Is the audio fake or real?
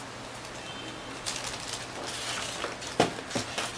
real